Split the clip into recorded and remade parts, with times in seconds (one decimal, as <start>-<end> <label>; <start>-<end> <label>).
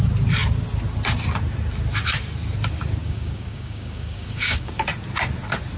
0.0-3.0 recorded; 3.0-4.7 remade; 4.7-5.8 recorded